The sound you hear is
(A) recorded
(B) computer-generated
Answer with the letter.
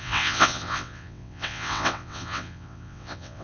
B